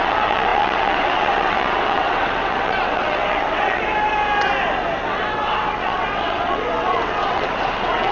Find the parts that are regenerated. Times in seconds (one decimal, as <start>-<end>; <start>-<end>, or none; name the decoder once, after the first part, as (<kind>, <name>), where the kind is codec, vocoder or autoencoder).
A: 0.0-3.8 (vocoder, WaveNeXt); 5.0-8.1